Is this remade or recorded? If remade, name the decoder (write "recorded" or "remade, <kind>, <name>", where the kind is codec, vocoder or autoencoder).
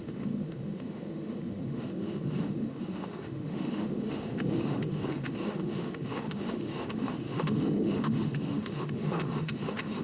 remade, autoencoder, DAC-VAE